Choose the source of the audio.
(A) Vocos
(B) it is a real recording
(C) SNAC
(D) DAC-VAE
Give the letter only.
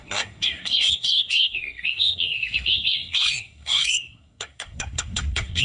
C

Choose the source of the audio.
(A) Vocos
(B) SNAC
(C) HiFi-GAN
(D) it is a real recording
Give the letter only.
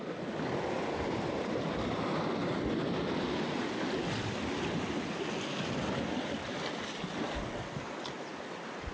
D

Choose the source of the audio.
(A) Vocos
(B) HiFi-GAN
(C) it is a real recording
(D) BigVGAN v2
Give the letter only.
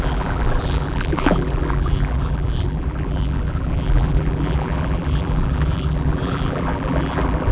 D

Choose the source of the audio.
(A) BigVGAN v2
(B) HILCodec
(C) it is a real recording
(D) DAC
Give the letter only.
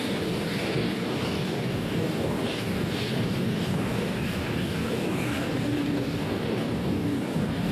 D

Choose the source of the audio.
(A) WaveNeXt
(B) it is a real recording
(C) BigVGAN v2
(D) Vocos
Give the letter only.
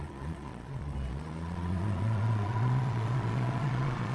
D